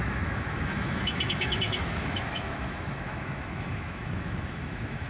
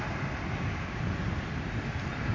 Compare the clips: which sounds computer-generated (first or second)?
first